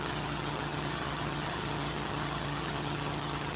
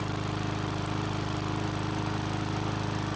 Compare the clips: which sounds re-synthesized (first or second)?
first